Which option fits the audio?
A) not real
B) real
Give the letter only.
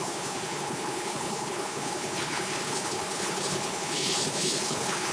A